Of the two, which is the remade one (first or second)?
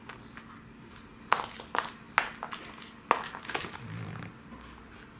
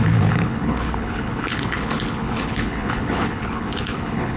second